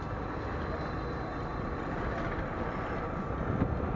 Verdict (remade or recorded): recorded